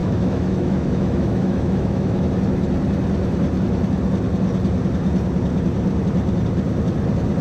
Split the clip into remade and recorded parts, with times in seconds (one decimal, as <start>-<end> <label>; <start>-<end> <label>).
0.0-2.3 remade; 2.3-7.4 recorded